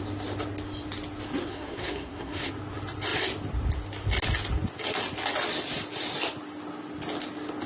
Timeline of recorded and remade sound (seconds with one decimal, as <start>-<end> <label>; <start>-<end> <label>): 0.0-1.5 recorded; 1.5-2.5 remade; 2.5-7.7 recorded